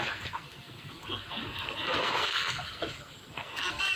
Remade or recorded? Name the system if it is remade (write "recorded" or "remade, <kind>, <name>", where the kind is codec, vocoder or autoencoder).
remade, codec, SNAC